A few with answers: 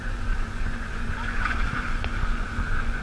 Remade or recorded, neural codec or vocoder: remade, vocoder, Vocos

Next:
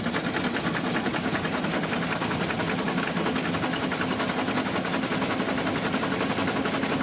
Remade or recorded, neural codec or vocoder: recorded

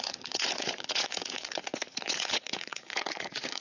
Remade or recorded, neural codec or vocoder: remade, vocoder, Vocos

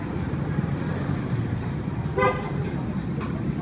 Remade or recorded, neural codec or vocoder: recorded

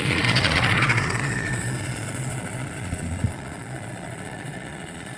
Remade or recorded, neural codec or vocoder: remade, vocoder, Vocos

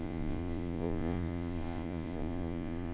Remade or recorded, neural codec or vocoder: remade, vocoder, Vocos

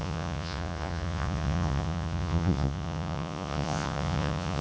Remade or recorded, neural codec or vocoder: remade, vocoder, Vocos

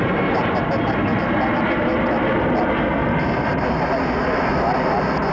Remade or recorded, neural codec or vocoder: recorded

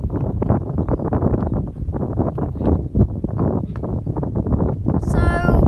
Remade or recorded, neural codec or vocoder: recorded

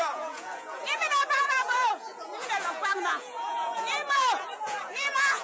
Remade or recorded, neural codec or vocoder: remade, vocoder, Vocos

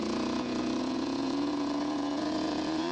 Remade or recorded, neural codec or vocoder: remade, vocoder, Vocos